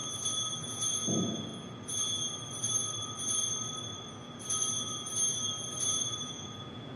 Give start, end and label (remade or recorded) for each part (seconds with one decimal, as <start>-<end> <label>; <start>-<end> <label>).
0.0-0.6 recorded; 0.6-1.5 remade; 1.5-5.7 recorded; 5.7-7.0 remade